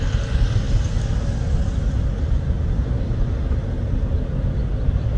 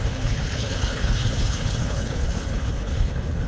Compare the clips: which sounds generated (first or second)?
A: second